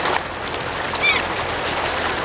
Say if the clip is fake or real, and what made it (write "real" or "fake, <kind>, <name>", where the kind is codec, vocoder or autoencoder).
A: real